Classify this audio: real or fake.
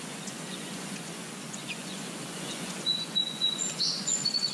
fake